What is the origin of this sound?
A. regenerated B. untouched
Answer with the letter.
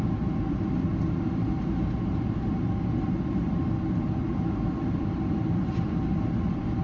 B